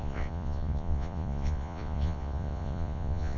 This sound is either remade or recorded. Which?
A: remade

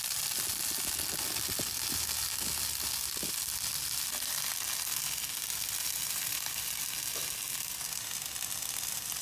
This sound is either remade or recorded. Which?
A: recorded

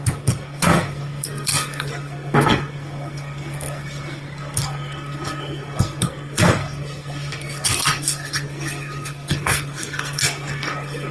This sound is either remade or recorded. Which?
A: remade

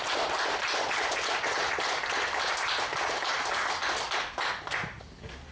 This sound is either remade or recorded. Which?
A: recorded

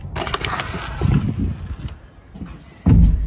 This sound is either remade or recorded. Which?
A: recorded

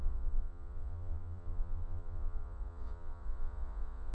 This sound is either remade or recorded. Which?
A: remade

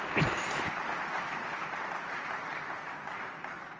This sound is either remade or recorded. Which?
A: remade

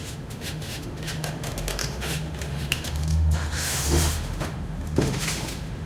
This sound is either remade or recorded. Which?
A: remade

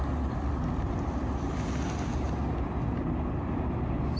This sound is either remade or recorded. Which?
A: recorded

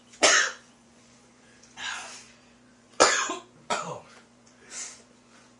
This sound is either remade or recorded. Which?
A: remade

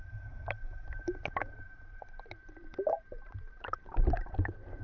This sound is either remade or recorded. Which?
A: remade